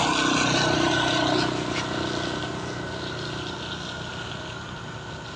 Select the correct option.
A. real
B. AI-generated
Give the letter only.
A